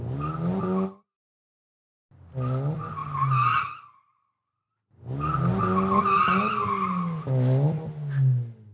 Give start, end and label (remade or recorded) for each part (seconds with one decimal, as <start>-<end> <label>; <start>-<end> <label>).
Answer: 0.0-8.7 recorded